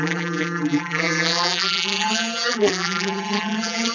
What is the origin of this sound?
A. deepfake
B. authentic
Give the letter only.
A